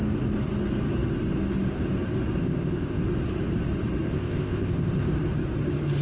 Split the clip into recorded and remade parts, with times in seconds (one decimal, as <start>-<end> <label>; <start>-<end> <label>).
0.0-2.4 recorded; 2.4-3.0 remade; 3.0-4.1 recorded; 4.1-5.1 remade; 5.1-6.0 recorded